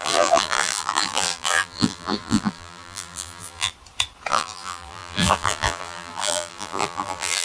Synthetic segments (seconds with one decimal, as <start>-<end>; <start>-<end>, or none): 0.0-3.7; 4.3-7.4